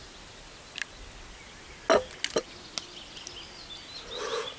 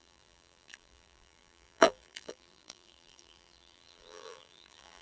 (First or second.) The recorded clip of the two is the first